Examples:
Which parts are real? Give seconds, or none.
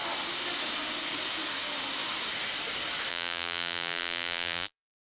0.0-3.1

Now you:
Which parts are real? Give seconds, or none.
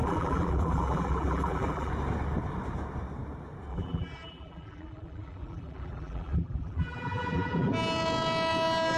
1.9-3.7; 7.7-9.0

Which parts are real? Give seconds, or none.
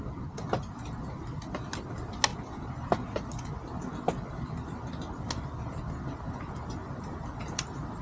0.0-6.8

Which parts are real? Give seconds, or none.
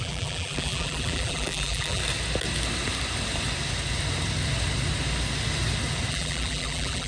2.0-6.1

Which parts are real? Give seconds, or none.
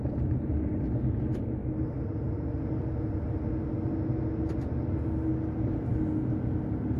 0.0-7.0